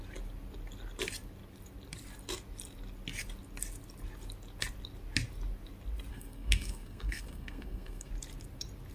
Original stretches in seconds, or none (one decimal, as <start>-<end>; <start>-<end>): 0.0-6.1; 8.1-8.9